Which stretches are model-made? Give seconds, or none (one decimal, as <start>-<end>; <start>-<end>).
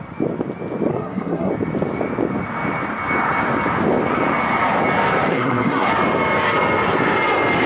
0.9-1.5; 5.3-5.9